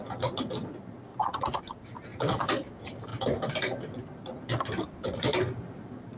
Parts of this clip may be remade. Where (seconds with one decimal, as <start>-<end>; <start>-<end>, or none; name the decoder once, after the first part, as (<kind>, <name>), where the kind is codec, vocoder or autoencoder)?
1.1-1.6 (vocoder, BigVGAN v2); 2.1-2.7; 3.1-5.8